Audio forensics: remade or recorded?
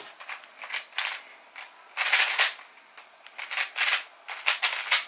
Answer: recorded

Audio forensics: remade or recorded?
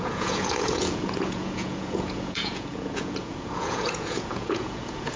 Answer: remade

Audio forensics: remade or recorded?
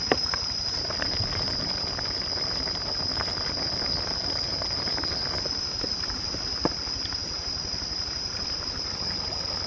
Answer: recorded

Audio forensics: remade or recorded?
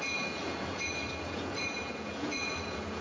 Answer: remade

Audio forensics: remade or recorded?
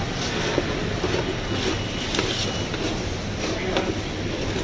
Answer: recorded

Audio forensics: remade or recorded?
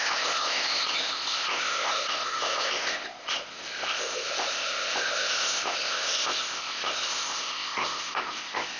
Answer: remade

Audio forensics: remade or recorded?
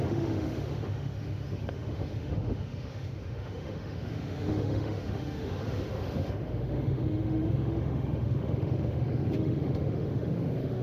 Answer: remade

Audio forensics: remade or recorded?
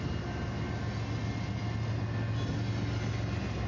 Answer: recorded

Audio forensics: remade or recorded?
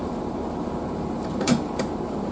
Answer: remade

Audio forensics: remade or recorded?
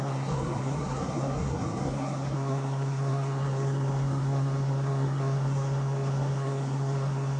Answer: remade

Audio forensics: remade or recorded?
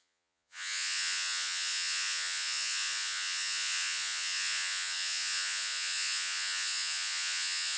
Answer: remade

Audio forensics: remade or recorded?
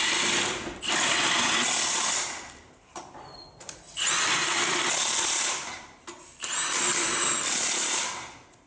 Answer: remade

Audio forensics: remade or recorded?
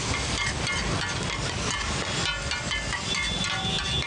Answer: recorded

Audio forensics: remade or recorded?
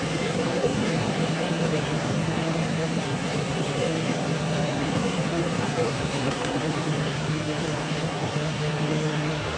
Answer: remade